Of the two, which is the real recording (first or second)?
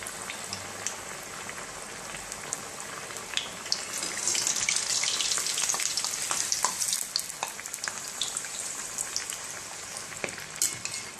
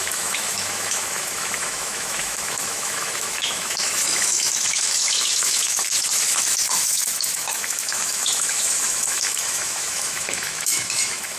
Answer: first